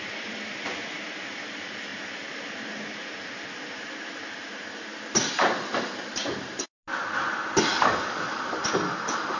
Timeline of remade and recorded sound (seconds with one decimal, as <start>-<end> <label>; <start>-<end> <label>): 0.0-7.7 recorded; 7.7-8.6 remade; 8.6-9.4 recorded